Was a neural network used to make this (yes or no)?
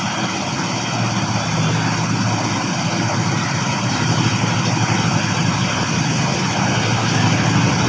no